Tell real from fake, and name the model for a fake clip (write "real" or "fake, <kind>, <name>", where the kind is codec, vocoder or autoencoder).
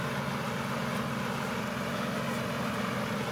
real